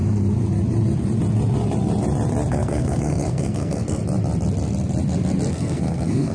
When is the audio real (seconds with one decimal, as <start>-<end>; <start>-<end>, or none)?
0.0-2.5; 4.0-5.5